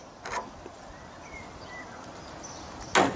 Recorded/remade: recorded